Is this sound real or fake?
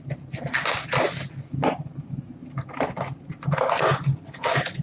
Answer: real